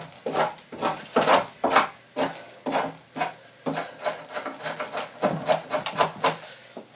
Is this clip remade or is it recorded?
recorded